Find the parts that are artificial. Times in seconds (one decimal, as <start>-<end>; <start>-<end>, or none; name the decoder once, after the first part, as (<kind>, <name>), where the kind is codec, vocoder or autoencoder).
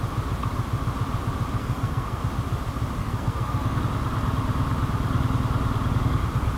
1.6-2.2 (codec, SNAC); 3.0-3.8